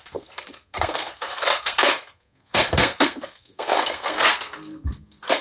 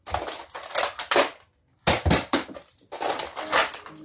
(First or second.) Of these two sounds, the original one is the second